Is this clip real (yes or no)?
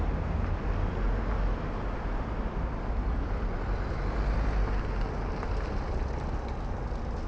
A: yes